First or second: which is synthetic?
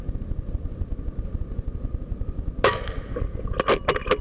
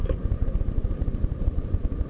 second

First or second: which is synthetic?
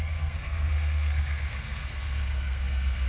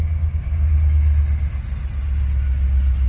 first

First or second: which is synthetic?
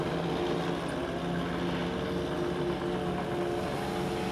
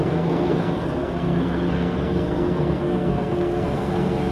second